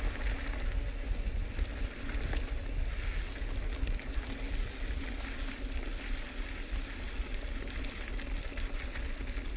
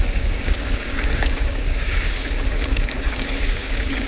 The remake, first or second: second